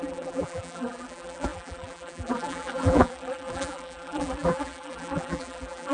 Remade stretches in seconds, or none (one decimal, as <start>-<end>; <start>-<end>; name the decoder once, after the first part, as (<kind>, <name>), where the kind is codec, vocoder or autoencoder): 0.0-5.9 (vocoder, BigVGAN v2)